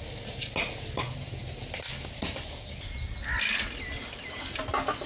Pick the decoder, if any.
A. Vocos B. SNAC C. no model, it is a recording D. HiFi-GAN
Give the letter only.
C